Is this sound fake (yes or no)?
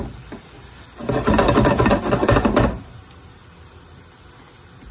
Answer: no